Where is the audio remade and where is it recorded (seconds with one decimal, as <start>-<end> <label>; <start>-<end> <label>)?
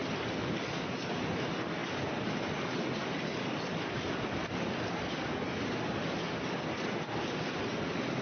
0.0-8.2 recorded